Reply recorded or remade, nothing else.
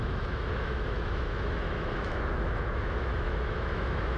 remade